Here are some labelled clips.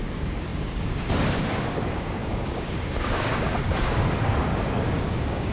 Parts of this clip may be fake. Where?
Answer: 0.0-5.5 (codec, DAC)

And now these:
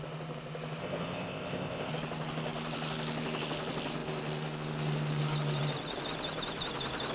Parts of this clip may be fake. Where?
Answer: 0.8-1.9 (codec, ZipCodec)